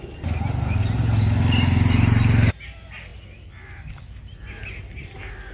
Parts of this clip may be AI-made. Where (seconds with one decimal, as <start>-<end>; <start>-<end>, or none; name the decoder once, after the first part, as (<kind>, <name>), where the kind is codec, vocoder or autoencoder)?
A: none